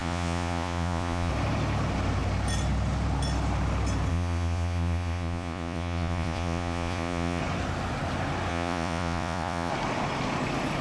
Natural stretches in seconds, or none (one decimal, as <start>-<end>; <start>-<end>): 1.3-4.1; 7.4-8.5; 9.7-10.8